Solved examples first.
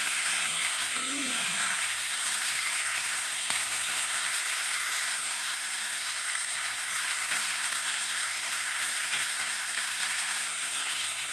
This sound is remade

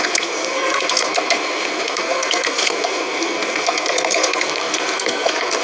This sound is remade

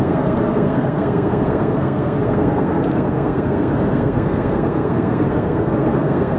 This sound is remade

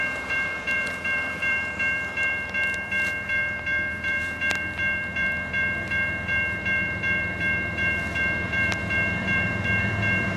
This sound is remade